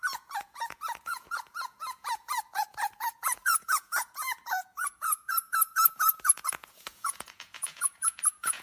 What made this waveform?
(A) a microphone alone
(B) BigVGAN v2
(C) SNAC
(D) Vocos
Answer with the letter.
D